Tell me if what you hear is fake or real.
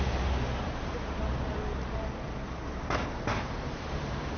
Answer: fake